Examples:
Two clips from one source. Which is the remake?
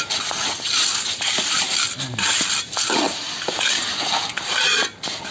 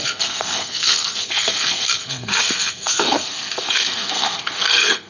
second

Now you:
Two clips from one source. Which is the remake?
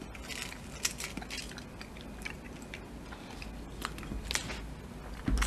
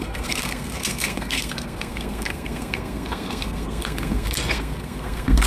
second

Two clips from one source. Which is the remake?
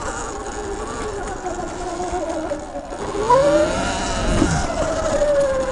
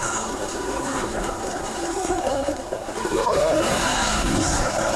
second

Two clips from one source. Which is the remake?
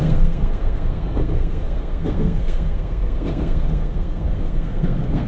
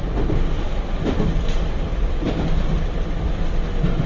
first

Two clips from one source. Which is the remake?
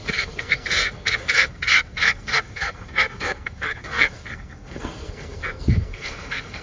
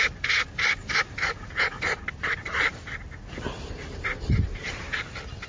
first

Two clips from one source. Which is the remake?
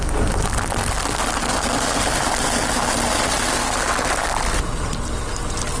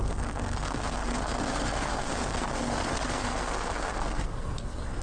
second